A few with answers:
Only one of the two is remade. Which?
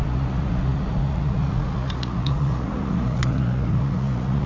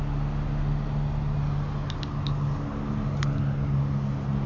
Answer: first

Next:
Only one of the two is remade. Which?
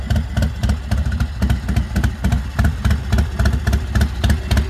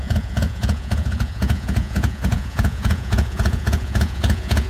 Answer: second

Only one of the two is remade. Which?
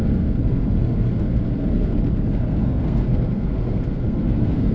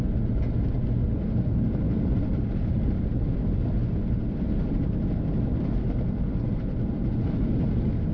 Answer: first